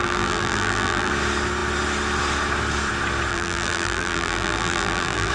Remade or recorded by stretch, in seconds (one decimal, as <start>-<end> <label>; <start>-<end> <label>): 0.0-1.1 remade; 1.1-3.3 recorded; 3.3-5.3 remade